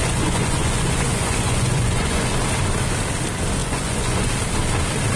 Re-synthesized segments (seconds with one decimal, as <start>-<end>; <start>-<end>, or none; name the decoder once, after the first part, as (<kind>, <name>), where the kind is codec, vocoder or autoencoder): 0.0-2.4 (vocoder, Vocos); 3.6-4.3